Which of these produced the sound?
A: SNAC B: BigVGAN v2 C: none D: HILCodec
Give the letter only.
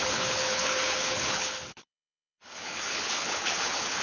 D